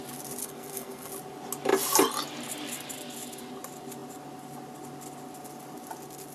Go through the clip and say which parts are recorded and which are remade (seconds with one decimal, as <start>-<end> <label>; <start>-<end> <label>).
0.0-0.4 recorded; 0.4-1.1 remade; 1.1-6.3 recorded